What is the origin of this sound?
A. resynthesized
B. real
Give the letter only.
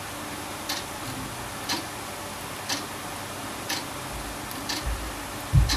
B